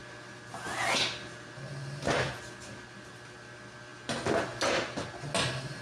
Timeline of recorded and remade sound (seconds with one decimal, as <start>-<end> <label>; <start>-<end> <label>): 0.0-5.8 recorded